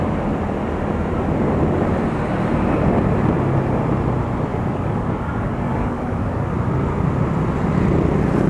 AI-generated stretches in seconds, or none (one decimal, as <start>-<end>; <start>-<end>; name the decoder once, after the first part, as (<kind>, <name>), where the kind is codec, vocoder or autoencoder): 4.5-6.5 (codec, DAC)